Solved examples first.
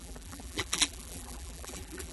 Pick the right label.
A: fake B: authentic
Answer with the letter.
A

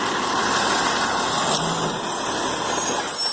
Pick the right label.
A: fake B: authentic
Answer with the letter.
B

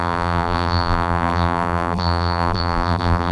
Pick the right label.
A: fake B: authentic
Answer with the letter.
A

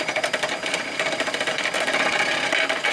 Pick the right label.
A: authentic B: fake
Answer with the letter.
B